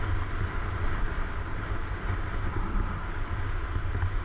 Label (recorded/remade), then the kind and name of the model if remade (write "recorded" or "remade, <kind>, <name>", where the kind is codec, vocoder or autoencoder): recorded